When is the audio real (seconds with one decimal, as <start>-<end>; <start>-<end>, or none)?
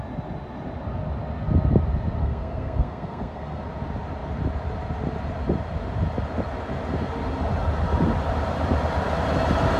0.0-2.2; 3.6-9.8